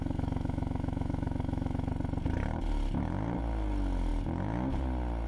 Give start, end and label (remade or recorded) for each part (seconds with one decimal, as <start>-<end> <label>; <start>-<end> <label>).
0.0-1.9 remade; 1.9-5.3 recorded